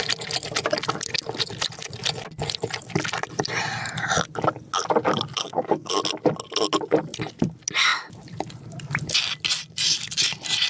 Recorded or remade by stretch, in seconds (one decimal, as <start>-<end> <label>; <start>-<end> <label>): 0.0-5.4 recorded; 5.4-5.9 remade; 5.9-10.7 recorded